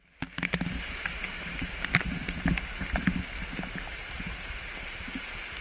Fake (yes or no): no